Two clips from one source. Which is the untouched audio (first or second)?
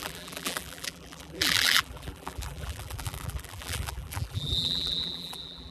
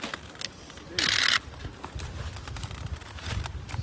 second